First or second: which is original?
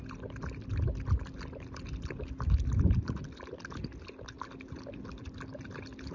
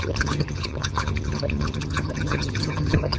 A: first